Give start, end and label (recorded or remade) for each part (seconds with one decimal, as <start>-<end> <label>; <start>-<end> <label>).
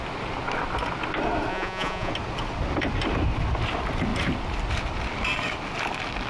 0.0-1.5 recorded; 1.5-2.1 remade; 2.1-6.3 recorded